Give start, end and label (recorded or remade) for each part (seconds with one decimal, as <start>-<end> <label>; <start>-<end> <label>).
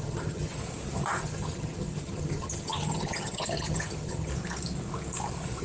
0.0-0.6 remade; 0.6-1.2 recorded; 1.2-4.3 remade; 4.3-5.6 recorded